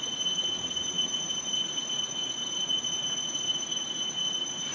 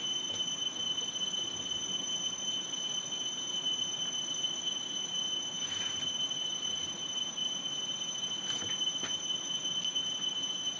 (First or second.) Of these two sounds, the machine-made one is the first